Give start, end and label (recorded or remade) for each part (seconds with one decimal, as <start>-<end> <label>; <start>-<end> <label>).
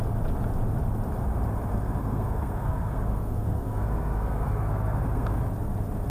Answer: 0.0-1.7 recorded; 1.7-5.4 remade; 5.4-6.1 recorded